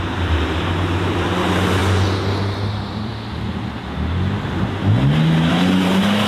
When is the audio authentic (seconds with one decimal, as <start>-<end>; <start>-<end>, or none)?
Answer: 1.8-2.7; 3.1-5.5

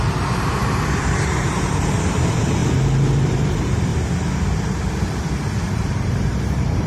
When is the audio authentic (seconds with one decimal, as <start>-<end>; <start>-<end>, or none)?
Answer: 2.6-3.3; 3.9-5.7

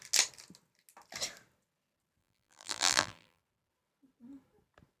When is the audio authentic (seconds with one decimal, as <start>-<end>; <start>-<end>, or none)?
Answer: 0.0-2.2; 3.4-5.0

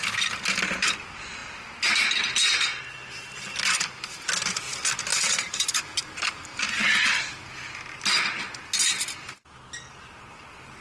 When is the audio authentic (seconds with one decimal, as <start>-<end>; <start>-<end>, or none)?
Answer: 0.0-5.1; 5.8-10.8

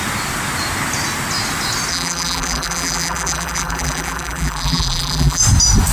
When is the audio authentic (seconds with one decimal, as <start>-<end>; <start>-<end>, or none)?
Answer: 0.0-1.9; 5.4-5.9

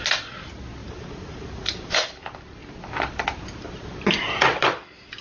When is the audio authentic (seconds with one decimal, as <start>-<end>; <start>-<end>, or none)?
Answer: 0.0-0.8; 2.2-5.2

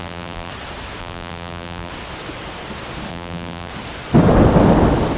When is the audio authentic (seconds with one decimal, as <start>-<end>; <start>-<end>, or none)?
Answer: 0.5-1.0; 1.9-3.1; 3.7-5.2